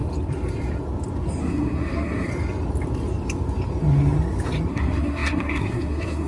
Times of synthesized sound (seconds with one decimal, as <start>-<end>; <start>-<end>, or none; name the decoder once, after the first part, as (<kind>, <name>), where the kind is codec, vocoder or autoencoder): 1.4-2.3 (codec, SNAC); 4.7-6.3